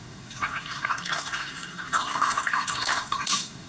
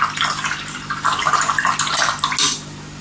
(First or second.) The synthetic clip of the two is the first